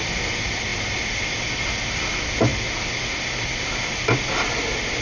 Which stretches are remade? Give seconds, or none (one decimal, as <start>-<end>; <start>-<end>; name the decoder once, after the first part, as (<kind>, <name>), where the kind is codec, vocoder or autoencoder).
none